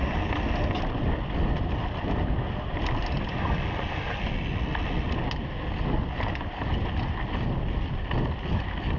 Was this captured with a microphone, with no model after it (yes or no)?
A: yes